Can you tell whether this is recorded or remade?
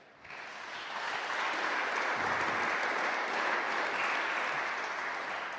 recorded